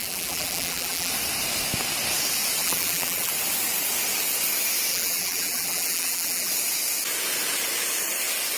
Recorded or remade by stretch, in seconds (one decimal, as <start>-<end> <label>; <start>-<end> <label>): 0.0-1.1 remade; 1.1-2.6 recorded; 2.6-3.3 remade; 3.3-4.9 recorded; 4.9-6.5 remade; 6.5-8.6 recorded